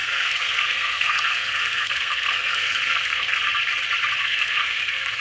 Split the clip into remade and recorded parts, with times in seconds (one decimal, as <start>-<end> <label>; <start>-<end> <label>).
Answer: 0.0-3.4 remade; 3.4-4.2 recorded; 4.2-5.2 remade